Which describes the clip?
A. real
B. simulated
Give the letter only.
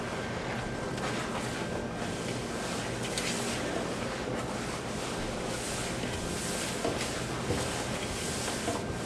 A